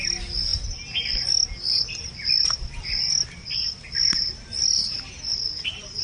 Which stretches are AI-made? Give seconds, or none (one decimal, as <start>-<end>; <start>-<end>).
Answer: 4.8-6.0